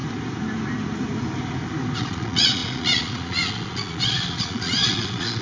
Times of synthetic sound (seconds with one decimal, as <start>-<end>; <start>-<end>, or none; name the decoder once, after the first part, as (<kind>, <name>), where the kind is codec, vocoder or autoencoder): 2.0-5.4 (vocoder, Vocos)